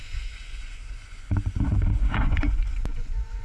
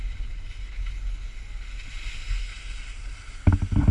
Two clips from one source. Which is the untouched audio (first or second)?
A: second